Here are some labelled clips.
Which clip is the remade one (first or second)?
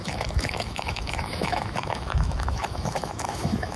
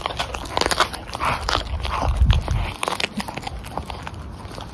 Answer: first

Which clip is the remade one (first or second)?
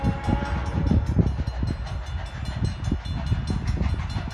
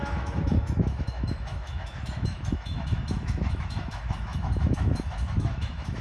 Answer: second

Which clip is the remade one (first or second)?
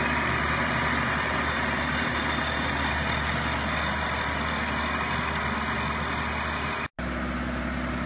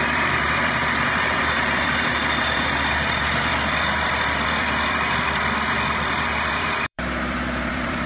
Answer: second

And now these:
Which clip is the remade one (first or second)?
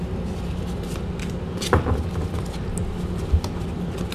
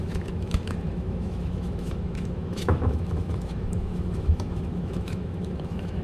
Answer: second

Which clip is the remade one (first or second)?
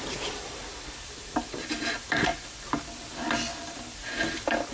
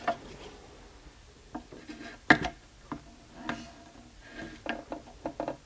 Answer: first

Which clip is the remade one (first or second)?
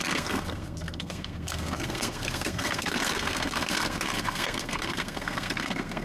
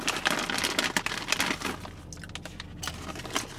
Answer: first